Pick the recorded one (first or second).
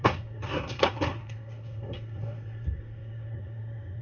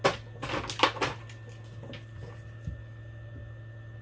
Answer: second